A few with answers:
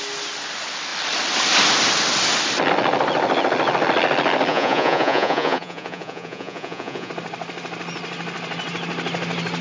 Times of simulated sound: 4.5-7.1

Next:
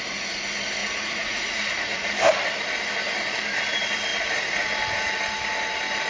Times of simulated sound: 0.8-2.1

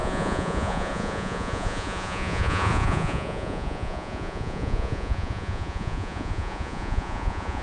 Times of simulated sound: 0.0-7.6

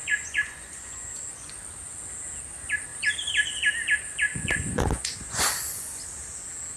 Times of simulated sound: 0.0-1.5; 4.3-6.0

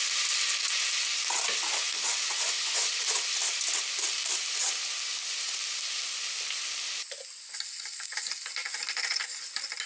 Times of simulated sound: 1.7-2.9